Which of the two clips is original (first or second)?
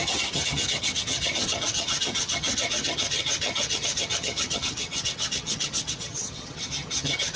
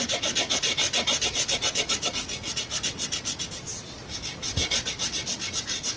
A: second